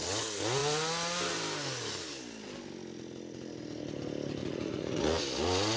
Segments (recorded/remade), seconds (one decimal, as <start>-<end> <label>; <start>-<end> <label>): 0.0-4.4 recorded; 4.4-5.2 remade; 5.2-5.8 recorded